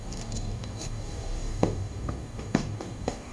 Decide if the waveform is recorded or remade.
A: remade